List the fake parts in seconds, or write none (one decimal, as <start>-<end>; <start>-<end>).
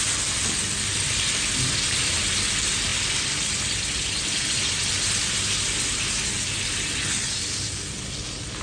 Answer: none